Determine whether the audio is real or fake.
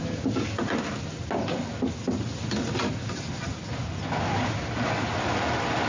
real